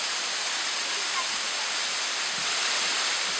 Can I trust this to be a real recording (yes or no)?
yes